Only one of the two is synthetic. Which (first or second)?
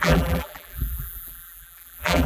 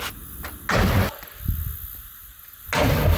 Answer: first